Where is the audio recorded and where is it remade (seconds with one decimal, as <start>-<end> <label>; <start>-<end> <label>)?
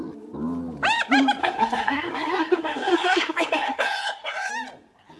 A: 0.0-1.4 recorded; 1.4-4.5 remade; 4.5-5.2 recorded